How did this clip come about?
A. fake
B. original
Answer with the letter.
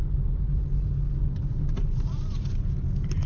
B